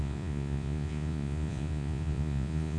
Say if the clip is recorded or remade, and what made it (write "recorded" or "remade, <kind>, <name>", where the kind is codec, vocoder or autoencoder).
remade, vocoder, Vocos